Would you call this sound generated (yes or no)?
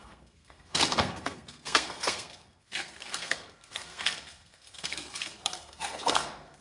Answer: yes